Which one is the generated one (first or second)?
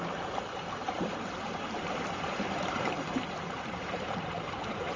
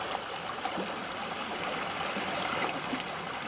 first